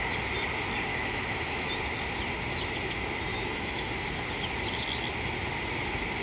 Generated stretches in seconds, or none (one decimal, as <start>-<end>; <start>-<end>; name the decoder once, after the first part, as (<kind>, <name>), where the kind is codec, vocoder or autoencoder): 0.9-1.7 (autoencoder, DAC-VAE); 3.3-3.9